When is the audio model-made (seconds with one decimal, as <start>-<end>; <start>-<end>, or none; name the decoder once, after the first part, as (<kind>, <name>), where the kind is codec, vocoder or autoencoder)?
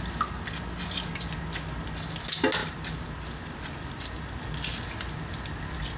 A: 2.6-4.4 (vocoder, BigVGAN v2)